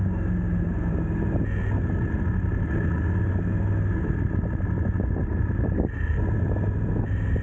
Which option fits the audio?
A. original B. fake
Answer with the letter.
A